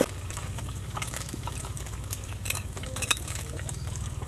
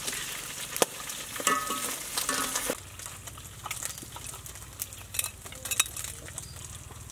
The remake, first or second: first